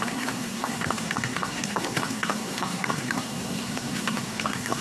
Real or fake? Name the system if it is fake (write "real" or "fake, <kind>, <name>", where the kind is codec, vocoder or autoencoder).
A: fake, codec, SNAC